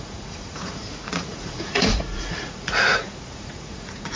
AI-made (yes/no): yes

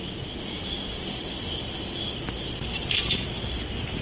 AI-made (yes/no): no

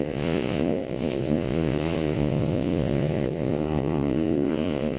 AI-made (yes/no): yes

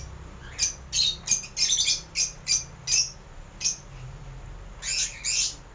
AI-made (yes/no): no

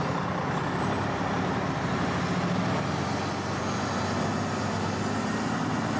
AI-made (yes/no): no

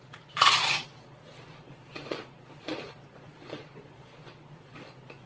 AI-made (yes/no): yes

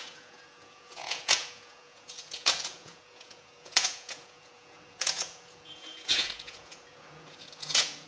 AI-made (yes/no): yes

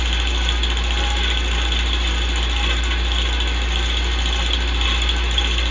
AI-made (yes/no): no